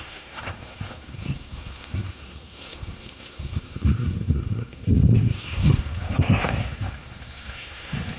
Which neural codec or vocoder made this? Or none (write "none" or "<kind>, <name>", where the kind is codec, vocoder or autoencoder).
codec, SNAC